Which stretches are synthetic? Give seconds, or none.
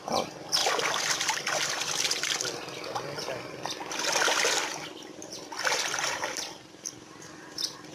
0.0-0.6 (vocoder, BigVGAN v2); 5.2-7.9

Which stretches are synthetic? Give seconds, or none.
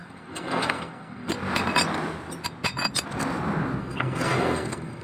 0.0-1.3 (codec, SNAC); 3.8-5.0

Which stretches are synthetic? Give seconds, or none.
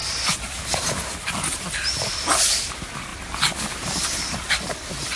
none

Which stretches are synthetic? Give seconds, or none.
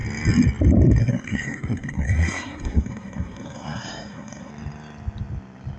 1.0-4.5 (codec, SNAC)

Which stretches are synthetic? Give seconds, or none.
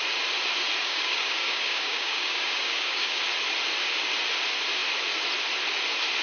0.8-3.2 (codec, DAC)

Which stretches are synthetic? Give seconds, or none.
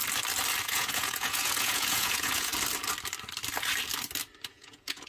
0.6-2.5 (vocoder, Vocos); 4.5-5.1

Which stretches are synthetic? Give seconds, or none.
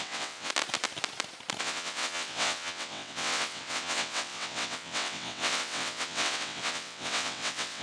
0.0-0.5 (vocoder, WaveNeXt); 1.6-7.8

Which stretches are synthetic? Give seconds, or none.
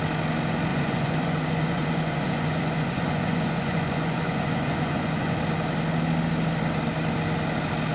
0.7-5.4 (vocoder, Vocos)